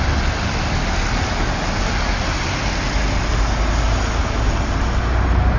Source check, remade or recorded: recorded